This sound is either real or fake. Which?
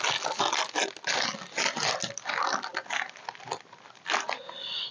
real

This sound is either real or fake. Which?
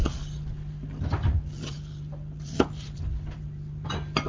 real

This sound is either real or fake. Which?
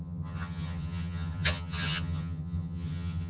fake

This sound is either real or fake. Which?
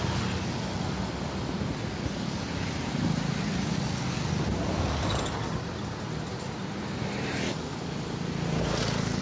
real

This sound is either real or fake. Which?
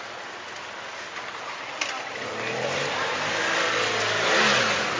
real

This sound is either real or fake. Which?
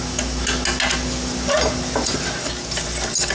real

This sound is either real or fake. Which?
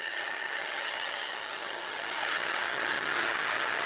fake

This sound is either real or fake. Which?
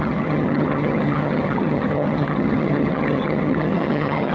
fake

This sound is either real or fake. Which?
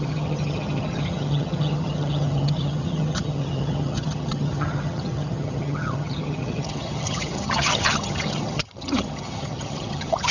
fake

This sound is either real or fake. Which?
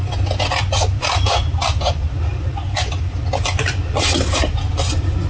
real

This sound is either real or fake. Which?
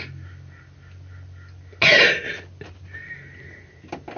real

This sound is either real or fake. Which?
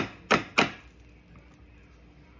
real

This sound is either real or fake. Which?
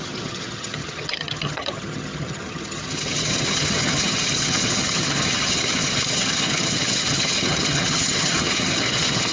fake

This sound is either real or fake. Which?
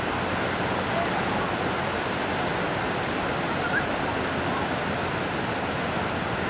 real